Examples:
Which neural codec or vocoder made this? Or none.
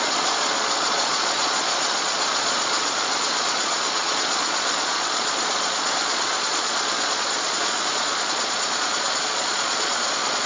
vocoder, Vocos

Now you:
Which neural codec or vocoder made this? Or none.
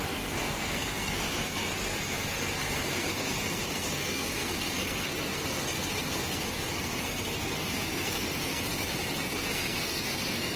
codec, SNAC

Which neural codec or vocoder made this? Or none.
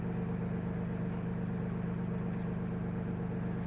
none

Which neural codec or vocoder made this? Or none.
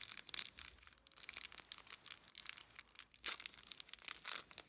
none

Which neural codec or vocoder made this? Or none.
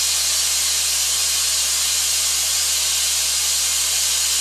none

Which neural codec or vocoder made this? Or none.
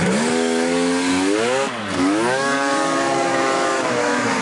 codec, DAC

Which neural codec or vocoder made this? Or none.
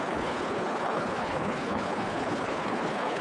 codec, HILCodec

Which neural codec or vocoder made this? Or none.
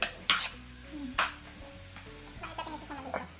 none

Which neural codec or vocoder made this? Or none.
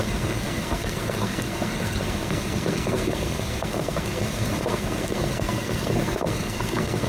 codec, SNAC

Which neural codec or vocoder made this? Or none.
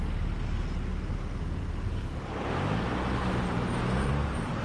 none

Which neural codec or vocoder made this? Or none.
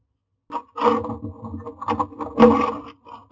none